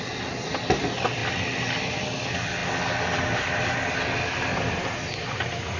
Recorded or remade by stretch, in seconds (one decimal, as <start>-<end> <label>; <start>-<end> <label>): 0.0-5.8 recorded